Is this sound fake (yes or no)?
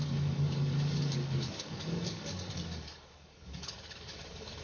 yes